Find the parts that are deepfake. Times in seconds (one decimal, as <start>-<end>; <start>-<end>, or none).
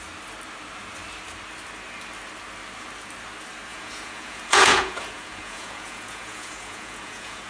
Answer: 3.7-7.5